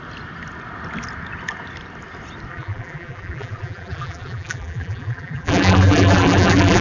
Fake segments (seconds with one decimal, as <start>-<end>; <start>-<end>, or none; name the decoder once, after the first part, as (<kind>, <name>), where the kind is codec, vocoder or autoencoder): 2.5-6.8 (vocoder, BigVGAN v2)